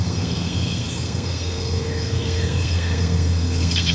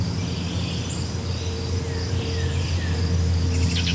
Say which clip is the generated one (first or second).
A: first